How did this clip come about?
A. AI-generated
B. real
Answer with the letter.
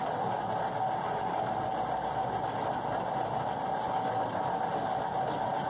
B